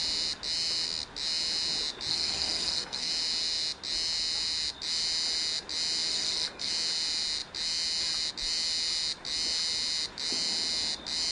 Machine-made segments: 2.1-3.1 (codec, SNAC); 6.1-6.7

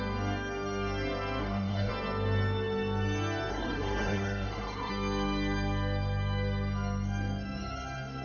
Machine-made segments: 1.4-1.9 (codec, SNAC); 3.5-4.9

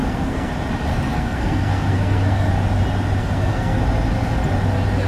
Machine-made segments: 0.0-0.5 (codec, SNAC); 0.9-2.5; 3.2-3.8

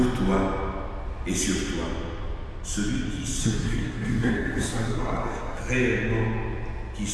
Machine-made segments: 3.4-5.6 (codec, SNAC)